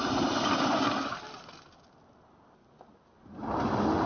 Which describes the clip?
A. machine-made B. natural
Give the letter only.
B